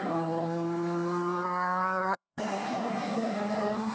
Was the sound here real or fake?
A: fake